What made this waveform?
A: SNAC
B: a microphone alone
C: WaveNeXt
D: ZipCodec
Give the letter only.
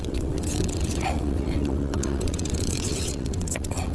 C